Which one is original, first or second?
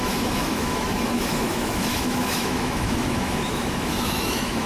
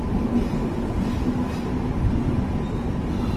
second